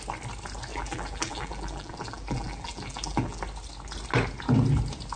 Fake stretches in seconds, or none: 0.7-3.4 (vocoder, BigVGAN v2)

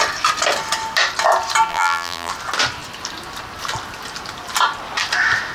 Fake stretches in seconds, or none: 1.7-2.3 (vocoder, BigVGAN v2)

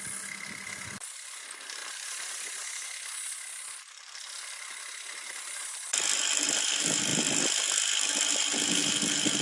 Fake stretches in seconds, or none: 1.8-6.2 (vocoder, BigVGAN v2); 7.1-7.7